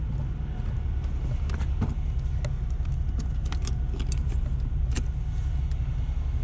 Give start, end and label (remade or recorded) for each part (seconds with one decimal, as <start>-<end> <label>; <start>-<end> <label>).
0.0-6.4 recorded

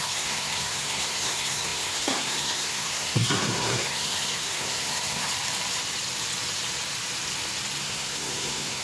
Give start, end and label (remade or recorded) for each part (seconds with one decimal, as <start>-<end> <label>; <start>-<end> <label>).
0.0-5.3 remade; 5.3-7.8 recorded; 7.8-8.8 remade

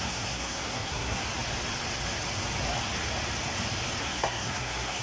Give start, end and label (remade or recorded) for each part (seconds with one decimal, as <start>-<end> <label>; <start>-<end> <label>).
0.0-1.2 remade; 1.2-4.0 recorded; 4.0-5.0 remade

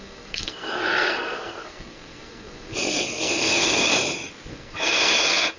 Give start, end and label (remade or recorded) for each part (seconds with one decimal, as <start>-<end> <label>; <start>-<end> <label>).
0.0-3.9 remade; 3.9-4.5 recorded; 4.5-5.6 remade

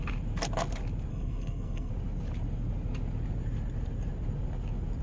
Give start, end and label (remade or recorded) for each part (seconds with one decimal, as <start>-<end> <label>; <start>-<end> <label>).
0.0-1.1 recorded; 1.1-1.9 remade; 1.9-5.0 recorded